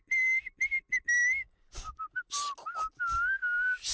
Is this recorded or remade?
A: recorded